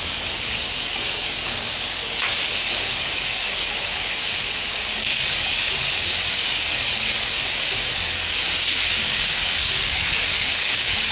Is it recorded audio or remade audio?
remade